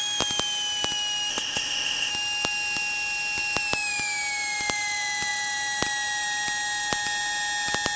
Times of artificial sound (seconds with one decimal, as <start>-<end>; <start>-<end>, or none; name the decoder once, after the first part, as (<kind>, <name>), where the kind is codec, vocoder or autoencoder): 1.3-2.1 (codec, ZipCodec)